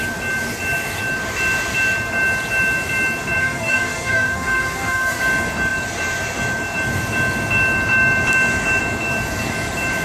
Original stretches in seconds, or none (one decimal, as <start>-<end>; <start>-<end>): 0.0-3.4; 5.2-10.0